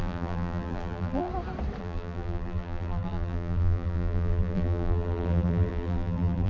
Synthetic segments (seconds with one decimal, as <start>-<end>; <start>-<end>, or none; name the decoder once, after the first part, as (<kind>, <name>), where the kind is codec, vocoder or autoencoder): 0.0-1.3 (vocoder, BigVGAN v2); 1.8-6.5